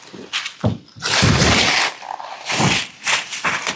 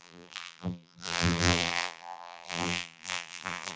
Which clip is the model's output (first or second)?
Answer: second